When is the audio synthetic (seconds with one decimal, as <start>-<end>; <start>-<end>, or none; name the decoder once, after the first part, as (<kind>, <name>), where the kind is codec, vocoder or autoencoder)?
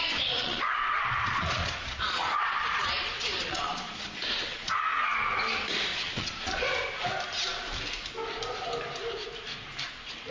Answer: 0.0-4.8 (vocoder, Vocos); 5.9-6.7